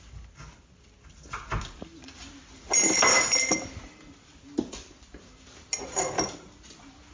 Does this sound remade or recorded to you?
recorded